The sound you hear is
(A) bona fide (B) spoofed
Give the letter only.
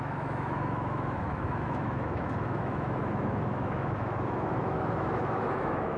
B